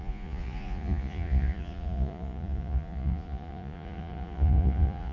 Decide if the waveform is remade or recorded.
remade